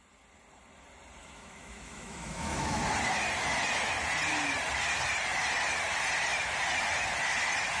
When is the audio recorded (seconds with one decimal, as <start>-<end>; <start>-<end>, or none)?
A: 0.0-1.2; 2.8-7.8